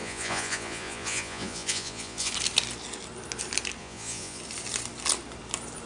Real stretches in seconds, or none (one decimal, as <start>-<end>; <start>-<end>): 2.3-3.8; 4.4-5.9